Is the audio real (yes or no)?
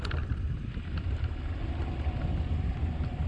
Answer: yes